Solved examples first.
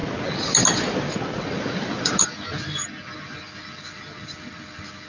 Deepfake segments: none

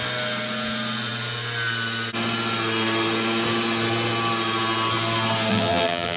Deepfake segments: 5.5-6.2 (vocoder, BigVGAN v2)

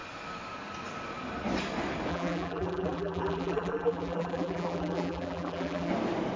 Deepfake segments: 2.1-5.9 (vocoder, BigVGAN v2)

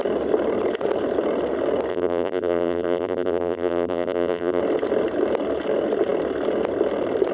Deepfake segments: 1.9-4.6 (vocoder, BigVGAN v2)

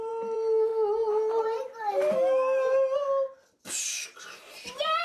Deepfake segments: 0.0-0.7 (vocoder, BigVGAN v2); 3.7-5.0